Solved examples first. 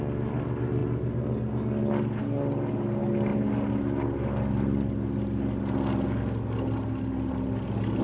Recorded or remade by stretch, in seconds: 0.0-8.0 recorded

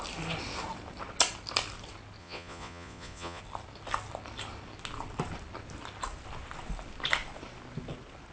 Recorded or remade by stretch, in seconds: 0.0-2.2 recorded; 2.2-3.4 remade; 3.4-8.3 recorded

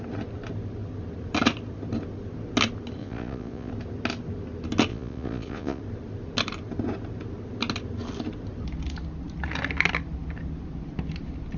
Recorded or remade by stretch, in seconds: 0.0-3.0 recorded; 3.0-3.7 remade; 3.7-4.9 recorded; 4.9-5.8 remade; 5.8-11.6 recorded

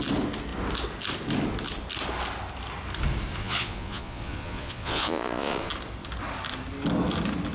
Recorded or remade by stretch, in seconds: 0.0-3.4 recorded; 3.4-5.7 remade; 5.7-7.5 recorded